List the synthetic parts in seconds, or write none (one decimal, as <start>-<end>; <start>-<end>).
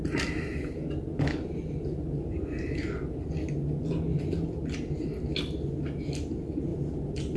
none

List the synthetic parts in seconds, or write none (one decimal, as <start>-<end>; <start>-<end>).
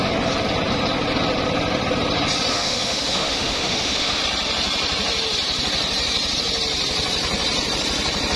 2.5-4.2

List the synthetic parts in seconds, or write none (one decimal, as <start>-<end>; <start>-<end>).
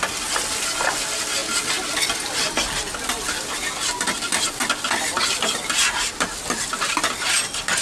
none